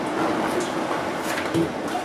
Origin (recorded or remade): recorded